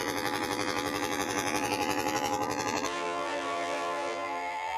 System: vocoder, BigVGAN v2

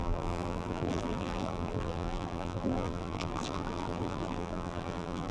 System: vocoder, BigVGAN v2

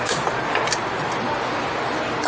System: vocoder, BigVGAN v2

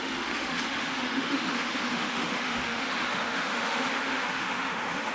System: autoencoder, DAC-VAE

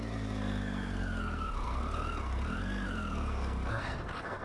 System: codec, SNAC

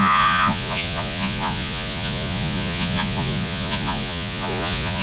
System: vocoder, Vocos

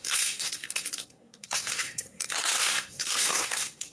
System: codec, SNAC